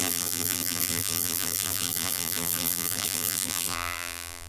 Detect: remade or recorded remade